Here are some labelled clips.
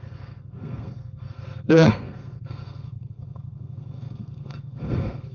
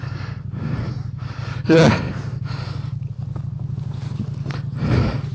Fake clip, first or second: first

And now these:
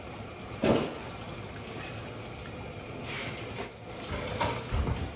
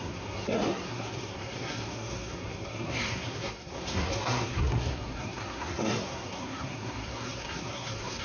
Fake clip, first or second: second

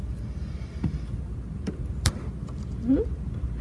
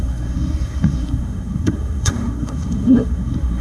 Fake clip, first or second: second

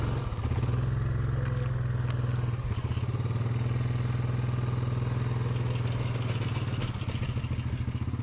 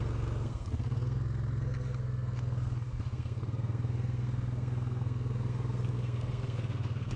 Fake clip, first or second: second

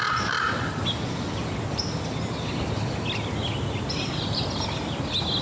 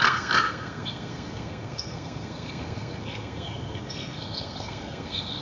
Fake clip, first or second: second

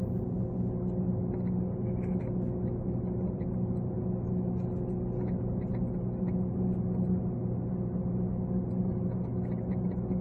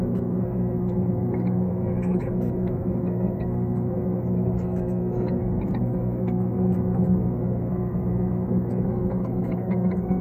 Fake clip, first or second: second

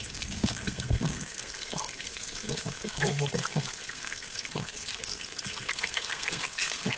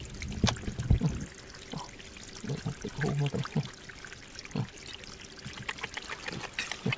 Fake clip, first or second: first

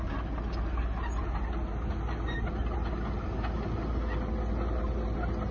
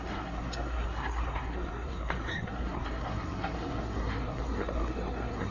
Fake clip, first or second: second